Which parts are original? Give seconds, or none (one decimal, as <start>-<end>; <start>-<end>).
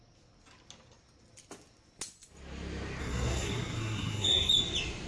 0.0-3.0; 4.5-5.1